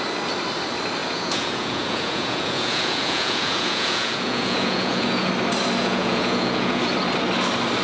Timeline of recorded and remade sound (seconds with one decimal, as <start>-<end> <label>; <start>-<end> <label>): 0.0-1.0 recorded; 1.0-5.3 remade; 5.3-5.8 recorded; 5.8-6.8 remade; 6.8-7.8 recorded